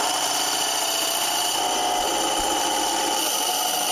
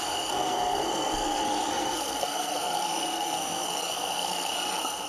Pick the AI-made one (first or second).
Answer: second